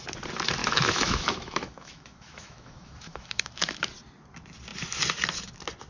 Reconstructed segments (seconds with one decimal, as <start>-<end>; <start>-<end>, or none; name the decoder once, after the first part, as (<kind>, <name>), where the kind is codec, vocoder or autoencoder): 0.6-3.8 (autoencoder, DAC-VAE)